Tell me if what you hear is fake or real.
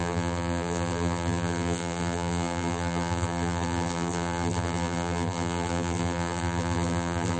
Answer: fake